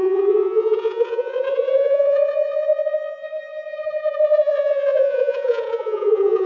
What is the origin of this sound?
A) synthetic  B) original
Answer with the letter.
A